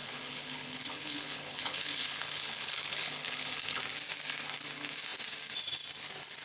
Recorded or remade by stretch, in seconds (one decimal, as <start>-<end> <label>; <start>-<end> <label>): 0.0-3.8 remade; 3.8-6.4 recorded